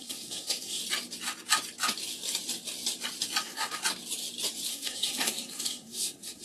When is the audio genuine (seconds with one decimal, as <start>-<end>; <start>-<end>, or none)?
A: 0.8-3.4; 3.8-4.7